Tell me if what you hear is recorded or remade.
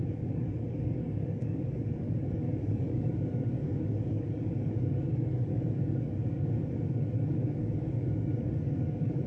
remade